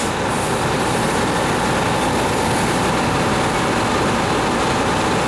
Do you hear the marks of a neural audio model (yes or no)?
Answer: no